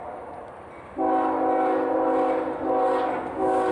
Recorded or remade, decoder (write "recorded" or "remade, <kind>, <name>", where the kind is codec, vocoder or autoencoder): recorded